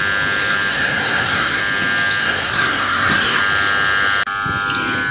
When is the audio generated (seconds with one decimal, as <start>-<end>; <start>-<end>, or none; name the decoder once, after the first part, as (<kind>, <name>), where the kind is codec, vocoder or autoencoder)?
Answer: 0.7-1.6 (codec, SNAC); 2.2-3.4